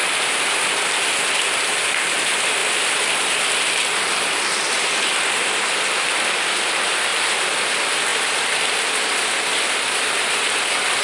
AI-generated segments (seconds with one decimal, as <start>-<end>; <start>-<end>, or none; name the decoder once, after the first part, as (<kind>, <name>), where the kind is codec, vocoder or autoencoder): 0.0-0.5 (vocoder, BigVGAN v2); 2.6-5.6; 7.1-7.6; 8.1-11.0